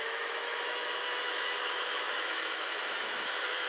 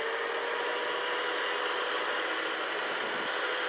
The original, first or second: second